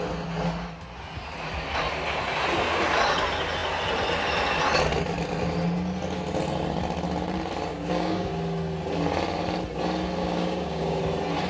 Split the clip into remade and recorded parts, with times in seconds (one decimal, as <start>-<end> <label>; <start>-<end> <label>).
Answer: 0.0-7.7 recorded; 7.7-8.3 remade; 8.3-10.2 recorded; 10.2-11.0 remade; 11.0-11.5 recorded